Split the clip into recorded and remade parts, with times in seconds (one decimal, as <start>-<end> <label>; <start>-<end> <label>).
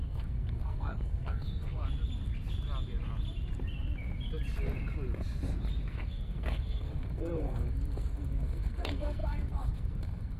0.0-1.8 remade; 1.8-5.8 recorded; 5.8-10.4 remade